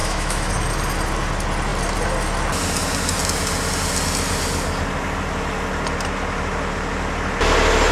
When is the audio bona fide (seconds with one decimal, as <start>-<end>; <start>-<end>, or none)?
0.5-7.9